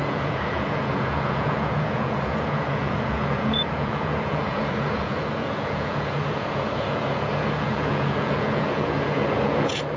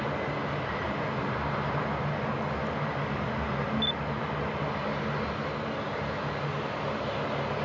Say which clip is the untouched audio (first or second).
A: second